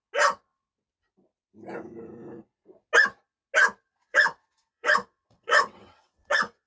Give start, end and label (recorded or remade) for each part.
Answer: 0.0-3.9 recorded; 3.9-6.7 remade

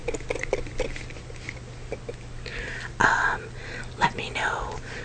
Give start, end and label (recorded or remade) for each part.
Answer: 0.0-5.0 recorded

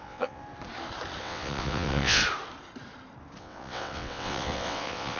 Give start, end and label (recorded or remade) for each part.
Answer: 0.0-0.4 remade; 0.4-1.2 recorded; 1.2-2.2 remade; 2.2-3.4 recorded; 3.4-5.2 remade

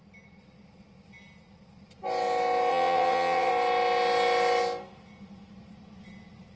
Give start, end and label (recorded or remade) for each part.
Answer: 0.0-2.7 recorded; 2.7-3.5 remade; 3.5-6.6 recorded

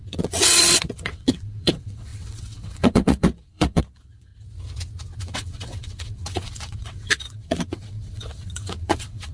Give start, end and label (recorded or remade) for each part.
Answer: 0.0-4.3 remade; 4.3-5.2 recorded; 5.2-9.3 remade

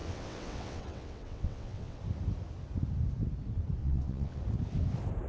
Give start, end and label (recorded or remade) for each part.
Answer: 0.0-2.0 remade; 2.0-3.8 recorded; 3.8-4.4 remade; 4.4-5.3 recorded

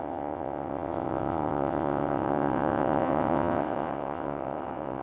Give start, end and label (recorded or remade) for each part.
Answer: 0.0-5.0 remade